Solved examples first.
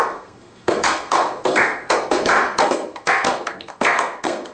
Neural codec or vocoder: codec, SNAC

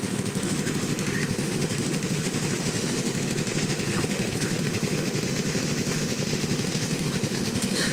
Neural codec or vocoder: autoencoder, DAC-VAE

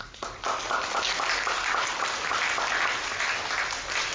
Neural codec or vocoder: none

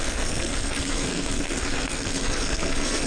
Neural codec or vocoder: codec, SNAC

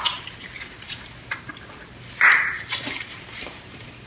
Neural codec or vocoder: vocoder, BigVGAN v2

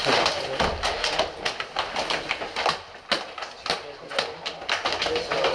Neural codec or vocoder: none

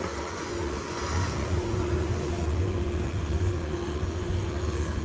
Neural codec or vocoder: vocoder, Vocos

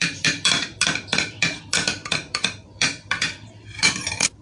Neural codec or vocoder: vocoder, BigVGAN v2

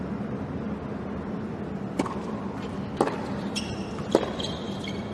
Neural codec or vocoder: none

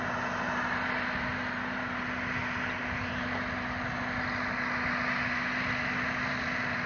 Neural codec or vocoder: none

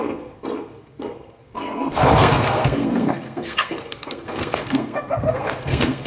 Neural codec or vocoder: codec, SNAC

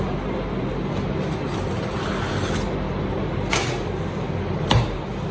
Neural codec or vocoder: none